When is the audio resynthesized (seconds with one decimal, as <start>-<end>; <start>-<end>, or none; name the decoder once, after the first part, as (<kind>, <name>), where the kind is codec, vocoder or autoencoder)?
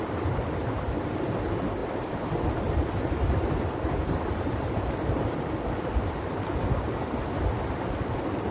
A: none